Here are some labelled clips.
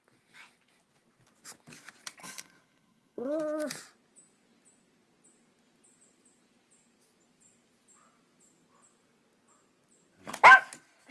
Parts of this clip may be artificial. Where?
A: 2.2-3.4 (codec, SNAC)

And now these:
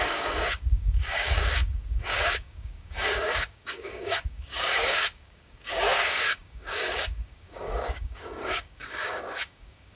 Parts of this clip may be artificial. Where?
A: 0.0-10.0 (codec, DAC)

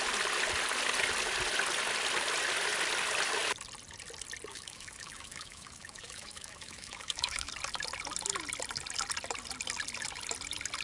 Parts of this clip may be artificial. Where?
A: 4.5-7.5 (autoencoder, DAC-VAE)

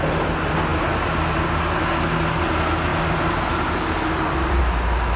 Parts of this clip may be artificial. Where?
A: 2.9-4.6 (vocoder, BigVGAN v2)

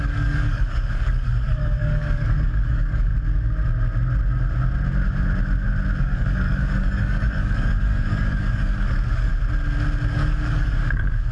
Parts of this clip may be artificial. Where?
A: 0.0-3.1 (codec, DAC); 6.0-9.3; 10.1-11.3